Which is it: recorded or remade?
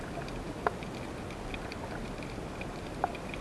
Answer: recorded